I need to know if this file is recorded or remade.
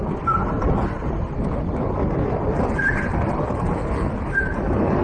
recorded